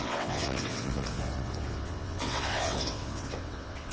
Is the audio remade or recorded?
remade